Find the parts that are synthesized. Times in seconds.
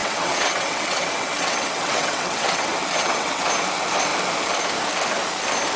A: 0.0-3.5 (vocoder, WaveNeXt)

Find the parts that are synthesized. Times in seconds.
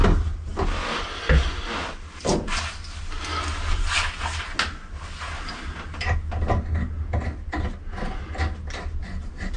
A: none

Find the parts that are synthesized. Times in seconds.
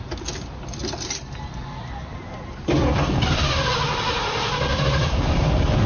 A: 0.8-3.6 (vocoder, BigVGAN v2); 4.7-5.4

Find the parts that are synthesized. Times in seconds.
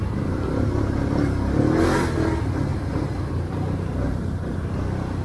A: 2.7-4.4 (vocoder, BigVGAN v2)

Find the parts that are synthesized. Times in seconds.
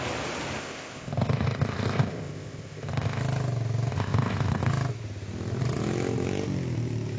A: 0.6-3.2 (codec, ZipCodec); 3.9-4.7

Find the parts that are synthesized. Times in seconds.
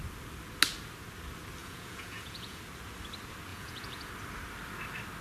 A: 1.6-2.6 (vocoder, Vocos); 3.5-4.1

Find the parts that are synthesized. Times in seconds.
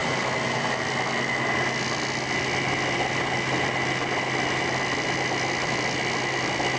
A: none